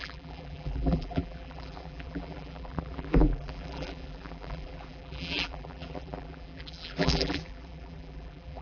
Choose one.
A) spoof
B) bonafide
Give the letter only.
A